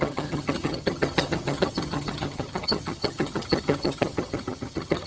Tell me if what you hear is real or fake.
fake